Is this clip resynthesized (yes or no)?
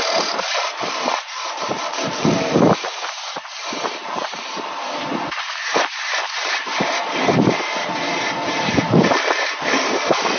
yes